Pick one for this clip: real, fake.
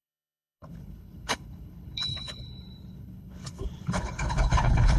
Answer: fake